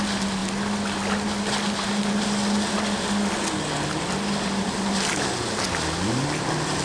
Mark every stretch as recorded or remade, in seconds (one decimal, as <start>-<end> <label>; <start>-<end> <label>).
0.0-6.8 recorded